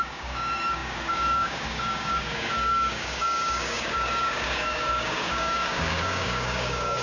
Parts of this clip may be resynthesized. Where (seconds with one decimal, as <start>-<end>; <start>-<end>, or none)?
0.0-7.0